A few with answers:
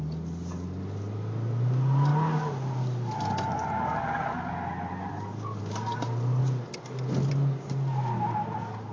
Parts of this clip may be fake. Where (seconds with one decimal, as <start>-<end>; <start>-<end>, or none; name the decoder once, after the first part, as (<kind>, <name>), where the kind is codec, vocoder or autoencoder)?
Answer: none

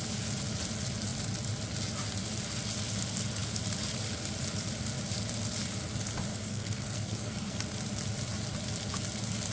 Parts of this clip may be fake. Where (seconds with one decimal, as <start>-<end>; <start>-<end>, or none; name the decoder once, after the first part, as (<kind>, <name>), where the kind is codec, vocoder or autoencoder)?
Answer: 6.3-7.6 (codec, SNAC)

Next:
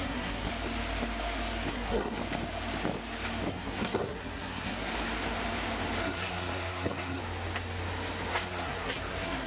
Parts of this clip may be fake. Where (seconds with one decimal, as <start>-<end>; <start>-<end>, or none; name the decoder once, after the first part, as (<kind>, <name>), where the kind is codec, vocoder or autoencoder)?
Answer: 0.0-0.5 (codec, SNAC); 1.7-2.2; 3.5-4.9; 6.0-7.2; 8.3-9.5

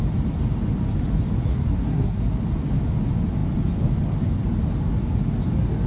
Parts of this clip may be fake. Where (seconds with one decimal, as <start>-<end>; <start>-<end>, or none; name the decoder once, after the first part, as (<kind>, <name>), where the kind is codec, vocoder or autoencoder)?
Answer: 1.5-2.2 (codec, SNAC)